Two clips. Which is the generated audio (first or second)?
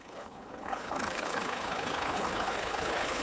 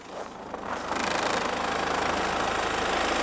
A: first